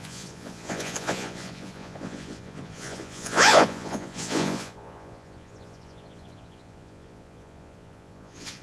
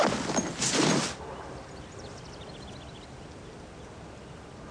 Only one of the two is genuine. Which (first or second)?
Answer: second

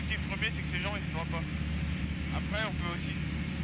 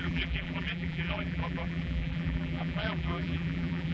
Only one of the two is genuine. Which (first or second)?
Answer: first